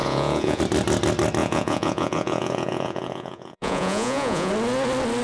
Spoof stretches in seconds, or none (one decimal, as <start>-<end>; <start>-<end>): 0.0-0.6; 1.4-4.5